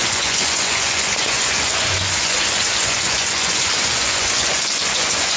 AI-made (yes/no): yes